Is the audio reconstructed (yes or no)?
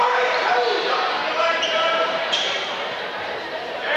yes